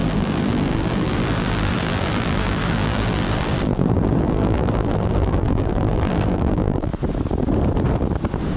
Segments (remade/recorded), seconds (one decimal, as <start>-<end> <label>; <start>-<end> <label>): 0.0-6.9 remade; 6.9-8.6 recorded